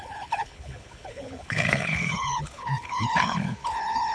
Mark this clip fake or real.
fake